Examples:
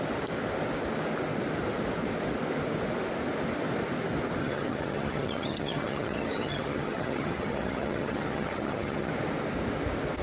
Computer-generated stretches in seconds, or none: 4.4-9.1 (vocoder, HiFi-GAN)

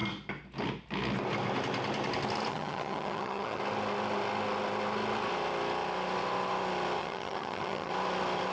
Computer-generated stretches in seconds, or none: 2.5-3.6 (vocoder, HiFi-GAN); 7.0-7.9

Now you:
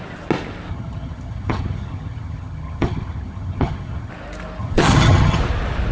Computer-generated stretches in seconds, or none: 0.7-4.1 (vocoder, HiFi-GAN); 4.6-5.4

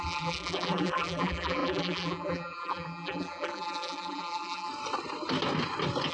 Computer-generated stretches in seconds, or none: 0.0-4.7 (vocoder, BigVGAN v2)

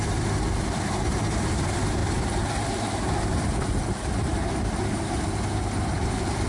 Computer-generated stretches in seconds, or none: 0.0-4.3 (vocoder, BigVGAN v2)

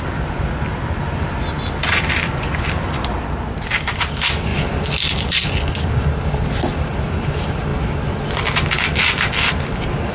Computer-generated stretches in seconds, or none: 0.0-4.5 (vocoder, BigVGAN v2); 5.1-7.7; 8.8-10.1

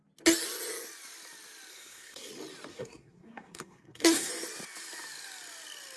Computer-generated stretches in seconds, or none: 1.7-2.3 (codec, SNAC); 2.7-4.3